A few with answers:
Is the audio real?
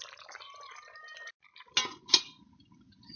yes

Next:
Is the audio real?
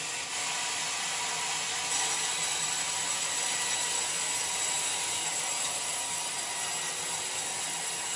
yes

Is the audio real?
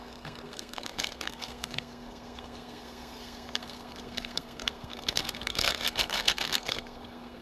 no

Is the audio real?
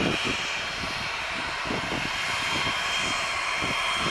yes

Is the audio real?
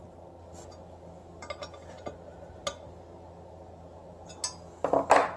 yes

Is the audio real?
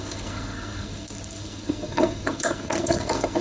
no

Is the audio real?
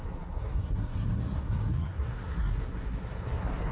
no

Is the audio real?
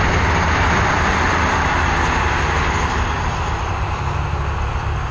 yes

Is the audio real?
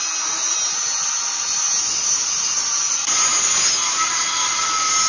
yes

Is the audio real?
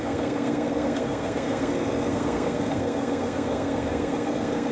no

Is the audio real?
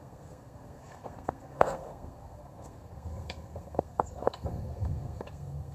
no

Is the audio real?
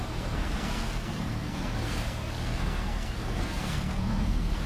no